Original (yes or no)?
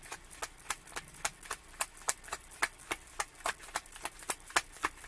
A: yes